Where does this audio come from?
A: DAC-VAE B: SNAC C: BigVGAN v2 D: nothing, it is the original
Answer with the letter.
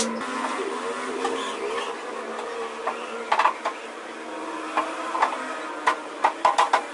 D